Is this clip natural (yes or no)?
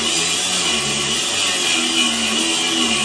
yes